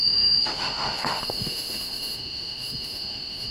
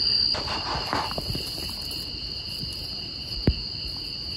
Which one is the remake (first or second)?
first